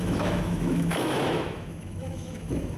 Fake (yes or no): yes